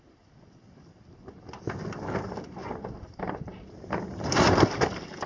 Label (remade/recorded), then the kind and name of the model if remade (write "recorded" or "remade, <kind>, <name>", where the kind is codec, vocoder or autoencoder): recorded